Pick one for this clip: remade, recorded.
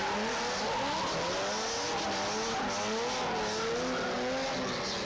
recorded